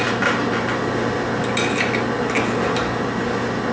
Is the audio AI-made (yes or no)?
no